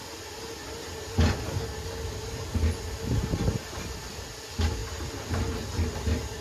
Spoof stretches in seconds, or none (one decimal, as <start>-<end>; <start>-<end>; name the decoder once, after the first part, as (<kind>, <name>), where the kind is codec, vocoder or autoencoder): none